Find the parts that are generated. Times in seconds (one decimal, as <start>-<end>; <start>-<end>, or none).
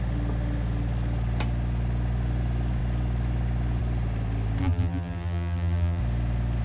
4.6-6.0